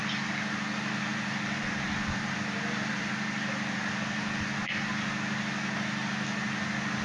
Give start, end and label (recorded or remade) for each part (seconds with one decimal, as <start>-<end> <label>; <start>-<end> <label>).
0.0-1.1 recorded; 1.1-3.1 remade; 3.1-7.0 recorded